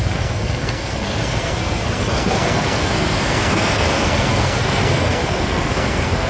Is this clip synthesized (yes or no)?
yes